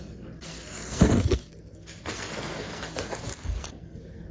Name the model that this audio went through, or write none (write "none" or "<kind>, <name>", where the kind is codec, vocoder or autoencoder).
codec, SNAC